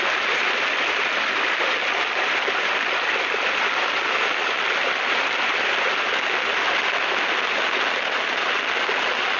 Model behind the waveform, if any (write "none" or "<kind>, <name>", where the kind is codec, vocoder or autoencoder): none